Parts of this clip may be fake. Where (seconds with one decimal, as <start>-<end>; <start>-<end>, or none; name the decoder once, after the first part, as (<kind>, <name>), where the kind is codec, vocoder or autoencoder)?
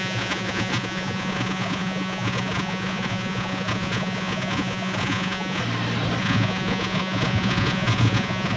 0.0-5.6 (vocoder, Vocos); 6.2-8.6